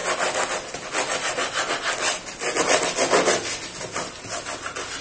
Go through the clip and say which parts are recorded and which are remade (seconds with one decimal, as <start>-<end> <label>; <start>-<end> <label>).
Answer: 0.0-5.0 recorded